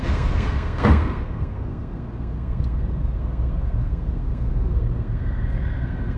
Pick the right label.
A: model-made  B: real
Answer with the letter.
A